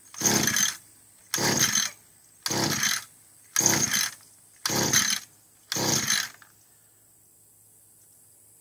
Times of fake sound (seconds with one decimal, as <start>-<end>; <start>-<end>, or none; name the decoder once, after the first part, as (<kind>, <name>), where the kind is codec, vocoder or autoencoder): none